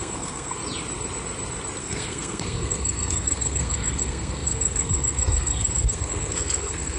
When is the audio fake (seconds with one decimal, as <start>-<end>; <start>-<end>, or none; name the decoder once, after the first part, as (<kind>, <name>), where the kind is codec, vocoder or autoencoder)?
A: 0.0-0.6 (codec, SNAC); 1.8-7.0